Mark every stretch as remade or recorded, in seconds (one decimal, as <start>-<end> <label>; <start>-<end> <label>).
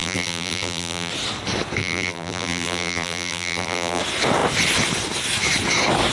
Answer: 0.0-1.1 remade; 1.1-1.8 recorded; 1.8-4.0 remade; 4.0-6.1 recorded